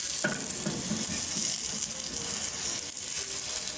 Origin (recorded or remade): recorded